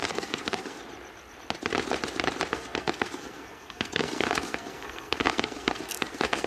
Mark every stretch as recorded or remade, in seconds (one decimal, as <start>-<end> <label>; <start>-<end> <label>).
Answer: 0.0-0.8 remade; 0.8-2.5 recorded; 2.5-6.5 remade